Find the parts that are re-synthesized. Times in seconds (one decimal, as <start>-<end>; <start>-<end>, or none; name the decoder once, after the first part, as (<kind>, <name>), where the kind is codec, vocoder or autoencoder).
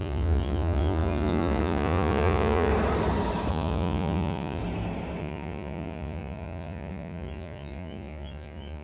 0.0-2.7 (vocoder, Vocos); 3.5-4.6; 5.2-8.8